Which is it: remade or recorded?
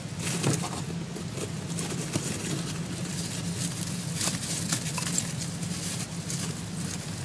recorded